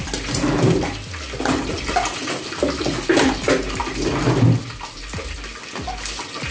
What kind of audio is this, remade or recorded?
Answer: recorded